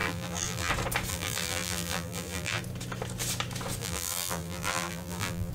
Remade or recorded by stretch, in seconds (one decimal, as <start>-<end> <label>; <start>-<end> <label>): 0.0-0.7 remade; 0.7-1.1 recorded; 1.1-2.6 remade; 2.6-3.8 recorded; 3.8-5.5 remade